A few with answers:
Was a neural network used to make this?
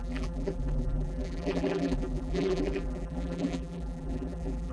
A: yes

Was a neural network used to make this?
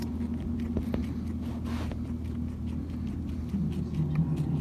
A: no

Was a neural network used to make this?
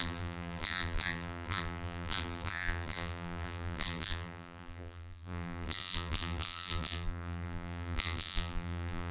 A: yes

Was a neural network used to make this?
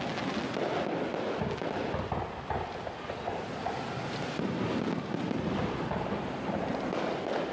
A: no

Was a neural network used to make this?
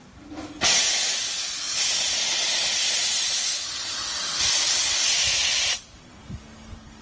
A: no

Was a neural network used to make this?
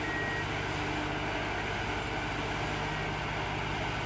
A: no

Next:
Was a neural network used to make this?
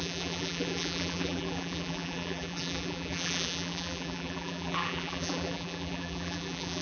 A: yes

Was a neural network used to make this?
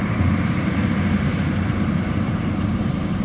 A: yes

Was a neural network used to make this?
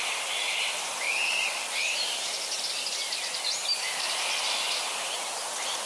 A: yes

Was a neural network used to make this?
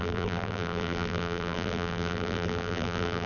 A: yes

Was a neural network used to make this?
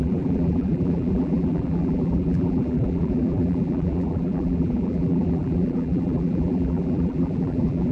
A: yes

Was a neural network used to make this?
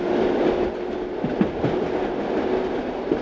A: no